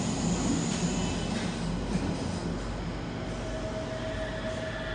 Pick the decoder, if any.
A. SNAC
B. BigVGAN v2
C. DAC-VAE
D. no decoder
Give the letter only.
D